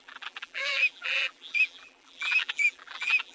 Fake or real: fake